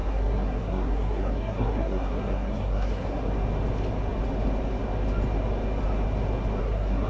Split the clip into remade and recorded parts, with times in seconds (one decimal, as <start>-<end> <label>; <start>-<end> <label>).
0.0-3.3 remade; 3.3-6.6 recorded; 6.6-7.1 remade